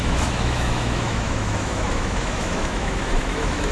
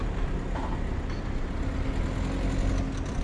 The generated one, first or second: first